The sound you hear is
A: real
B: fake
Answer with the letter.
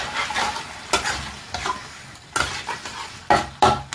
A